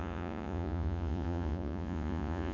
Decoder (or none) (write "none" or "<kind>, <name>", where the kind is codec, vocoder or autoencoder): vocoder, Vocos